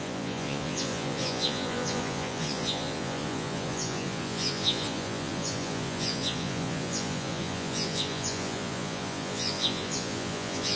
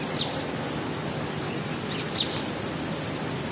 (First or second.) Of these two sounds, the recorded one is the second